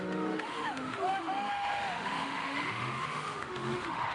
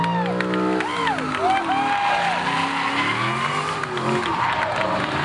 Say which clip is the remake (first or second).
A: first